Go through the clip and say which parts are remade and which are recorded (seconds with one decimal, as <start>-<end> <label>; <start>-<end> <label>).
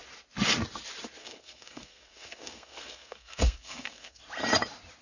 0.0-1.2 recorded; 1.2-4.2 remade; 4.2-5.0 recorded